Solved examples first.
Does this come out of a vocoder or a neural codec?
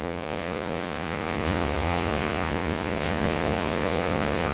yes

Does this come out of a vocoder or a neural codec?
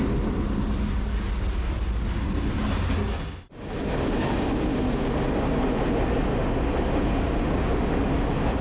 no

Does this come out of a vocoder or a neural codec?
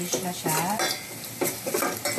no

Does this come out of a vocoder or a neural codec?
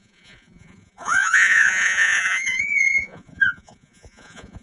yes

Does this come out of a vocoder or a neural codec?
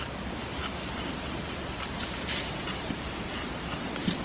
no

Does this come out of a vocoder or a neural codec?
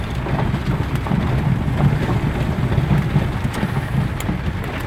no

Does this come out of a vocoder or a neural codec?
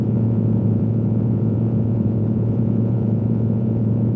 yes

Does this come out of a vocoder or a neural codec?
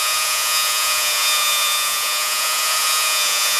yes